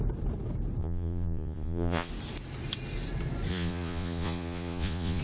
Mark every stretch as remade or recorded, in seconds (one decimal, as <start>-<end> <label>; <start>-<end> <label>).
0.0-0.8 recorded; 0.8-2.1 remade; 2.1-3.5 recorded; 3.5-5.2 remade